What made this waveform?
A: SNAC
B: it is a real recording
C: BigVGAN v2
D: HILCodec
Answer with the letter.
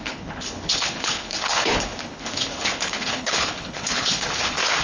D